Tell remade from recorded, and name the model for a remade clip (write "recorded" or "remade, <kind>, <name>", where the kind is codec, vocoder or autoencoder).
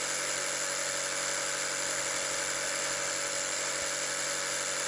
recorded